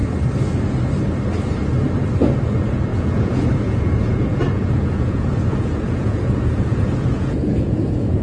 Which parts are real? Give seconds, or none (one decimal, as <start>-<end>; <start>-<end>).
0.0-2.9